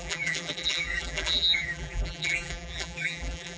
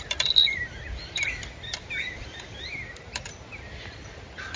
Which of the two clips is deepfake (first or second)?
first